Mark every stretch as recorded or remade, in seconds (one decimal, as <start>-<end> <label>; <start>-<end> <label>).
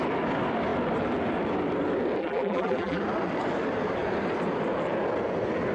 0.0-2.2 recorded; 2.2-3.0 remade; 3.0-5.7 recorded